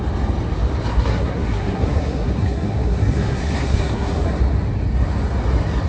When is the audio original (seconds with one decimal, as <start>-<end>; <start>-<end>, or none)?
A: 0.0-0.9; 4.4-5.9